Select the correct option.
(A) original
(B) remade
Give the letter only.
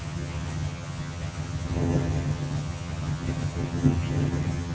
B